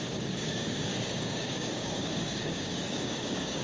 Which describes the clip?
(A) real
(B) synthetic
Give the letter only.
B